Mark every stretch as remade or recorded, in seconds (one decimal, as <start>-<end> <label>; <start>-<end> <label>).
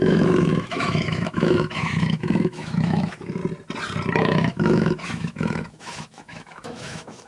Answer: 0.0-3.4 remade; 3.4-4.2 recorded; 4.2-7.3 remade